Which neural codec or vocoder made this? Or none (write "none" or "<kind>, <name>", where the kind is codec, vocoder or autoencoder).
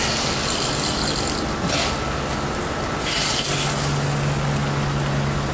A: none